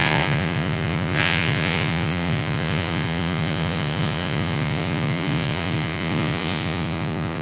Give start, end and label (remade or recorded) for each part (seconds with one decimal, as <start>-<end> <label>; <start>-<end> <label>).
0.0-7.4 remade

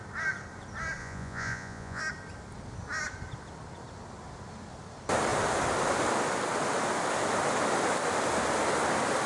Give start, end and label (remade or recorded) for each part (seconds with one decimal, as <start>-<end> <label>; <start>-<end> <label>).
0.0-1.0 recorded; 1.0-2.0 remade; 2.0-9.3 recorded

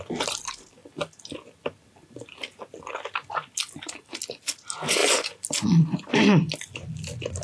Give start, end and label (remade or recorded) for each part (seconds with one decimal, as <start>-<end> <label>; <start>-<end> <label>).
0.0-7.4 recorded